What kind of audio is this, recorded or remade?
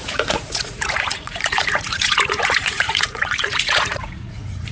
remade